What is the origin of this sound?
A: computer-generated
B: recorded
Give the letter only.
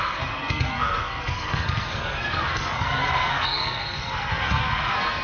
A